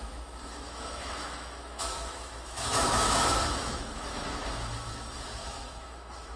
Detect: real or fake fake